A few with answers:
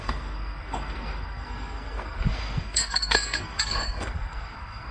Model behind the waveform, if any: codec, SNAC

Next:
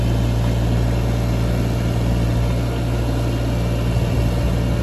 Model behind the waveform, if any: none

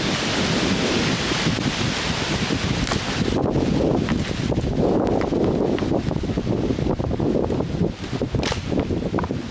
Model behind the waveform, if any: none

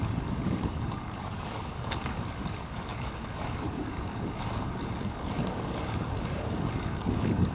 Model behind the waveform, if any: codec, DAC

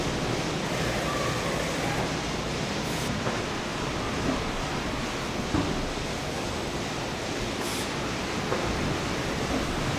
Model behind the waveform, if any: none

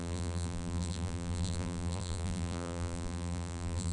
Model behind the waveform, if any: vocoder, BigVGAN v2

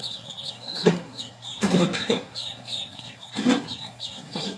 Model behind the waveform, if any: codec, SNAC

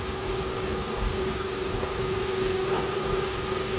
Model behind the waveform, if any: codec, DAC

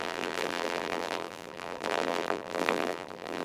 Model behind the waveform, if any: vocoder, BigVGAN v2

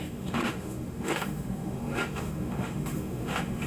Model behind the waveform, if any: autoencoder, DAC-VAE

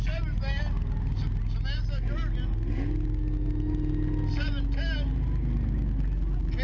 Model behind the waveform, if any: none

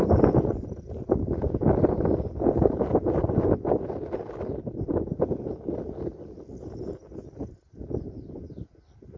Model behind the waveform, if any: none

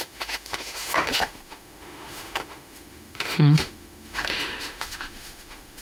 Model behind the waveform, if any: autoencoder, DAC-VAE